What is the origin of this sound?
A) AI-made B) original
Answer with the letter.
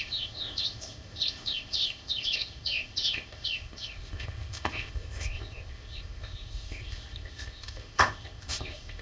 A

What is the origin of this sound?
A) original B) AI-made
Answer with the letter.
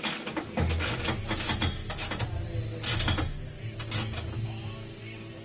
A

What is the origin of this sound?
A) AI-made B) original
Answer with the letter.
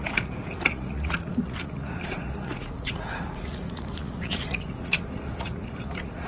A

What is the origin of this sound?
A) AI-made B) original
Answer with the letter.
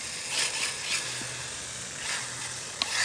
B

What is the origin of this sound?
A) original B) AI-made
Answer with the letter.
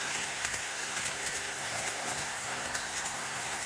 B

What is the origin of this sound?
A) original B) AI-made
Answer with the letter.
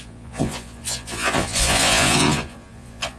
B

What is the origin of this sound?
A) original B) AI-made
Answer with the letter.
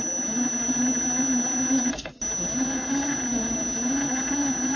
A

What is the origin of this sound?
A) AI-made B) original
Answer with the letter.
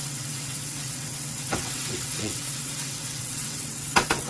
A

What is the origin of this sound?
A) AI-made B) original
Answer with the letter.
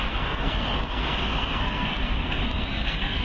A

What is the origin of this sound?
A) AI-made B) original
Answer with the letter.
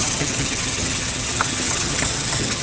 A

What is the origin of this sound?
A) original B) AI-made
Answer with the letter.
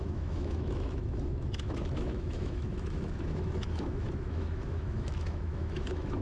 B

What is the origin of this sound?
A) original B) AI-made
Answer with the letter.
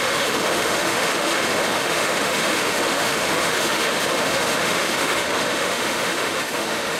B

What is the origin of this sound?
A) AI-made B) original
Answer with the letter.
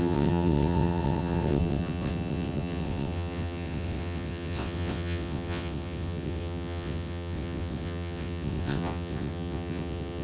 A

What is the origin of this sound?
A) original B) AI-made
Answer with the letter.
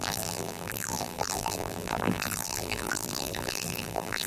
B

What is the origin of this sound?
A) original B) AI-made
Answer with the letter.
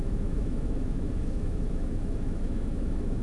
B